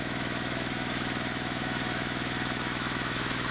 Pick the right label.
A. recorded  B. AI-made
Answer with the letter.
B